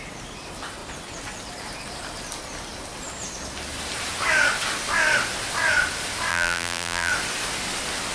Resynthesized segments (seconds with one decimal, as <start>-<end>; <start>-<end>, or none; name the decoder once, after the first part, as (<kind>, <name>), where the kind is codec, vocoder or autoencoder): 6.3-7.1 (vocoder, BigVGAN v2)